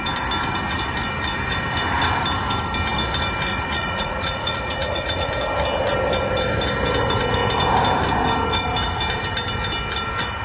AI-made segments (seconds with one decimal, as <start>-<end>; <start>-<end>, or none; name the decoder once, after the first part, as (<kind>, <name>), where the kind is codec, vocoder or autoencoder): 3.5-5.3 (vocoder, Vocos)